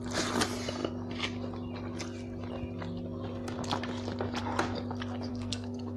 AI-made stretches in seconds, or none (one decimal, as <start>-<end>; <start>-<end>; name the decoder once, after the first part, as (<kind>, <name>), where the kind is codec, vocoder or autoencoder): 5.3-6.0 (codec, SNAC)